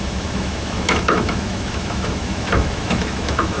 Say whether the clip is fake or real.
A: fake